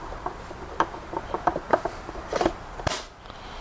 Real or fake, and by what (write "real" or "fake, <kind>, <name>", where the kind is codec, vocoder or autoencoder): fake, vocoder, BigVGAN v2